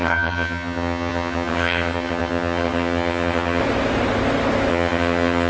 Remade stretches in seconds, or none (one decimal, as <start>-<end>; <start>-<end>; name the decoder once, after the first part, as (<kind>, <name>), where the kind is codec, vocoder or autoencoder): 0.0-3.6 (vocoder, HiFi-GAN); 4.7-5.5

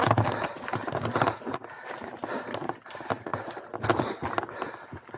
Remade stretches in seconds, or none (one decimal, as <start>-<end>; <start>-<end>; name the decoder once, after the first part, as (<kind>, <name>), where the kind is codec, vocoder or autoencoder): none

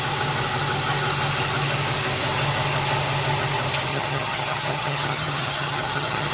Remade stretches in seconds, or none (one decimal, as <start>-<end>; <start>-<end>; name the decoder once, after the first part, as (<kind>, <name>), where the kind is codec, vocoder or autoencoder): 3.9-6.3 (vocoder, HiFi-GAN)

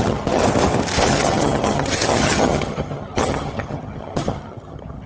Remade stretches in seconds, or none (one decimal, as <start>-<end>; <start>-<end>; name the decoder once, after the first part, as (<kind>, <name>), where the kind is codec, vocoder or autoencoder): 0.0-0.4 (vocoder, HiFi-GAN); 1.1-5.1

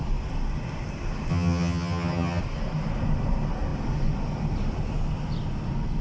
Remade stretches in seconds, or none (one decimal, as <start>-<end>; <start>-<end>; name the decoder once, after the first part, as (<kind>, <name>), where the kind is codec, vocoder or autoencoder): 1.3-2.4 (vocoder, HiFi-GAN)

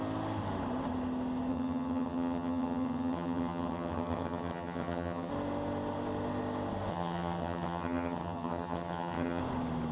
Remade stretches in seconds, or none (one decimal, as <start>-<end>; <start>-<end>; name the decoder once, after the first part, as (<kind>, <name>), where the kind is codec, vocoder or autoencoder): 1.5-5.3 (vocoder, HiFi-GAN); 6.9-9.4